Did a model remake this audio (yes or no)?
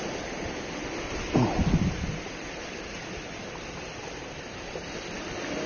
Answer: no